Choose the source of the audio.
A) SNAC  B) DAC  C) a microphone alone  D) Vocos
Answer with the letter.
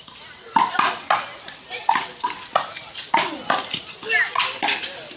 C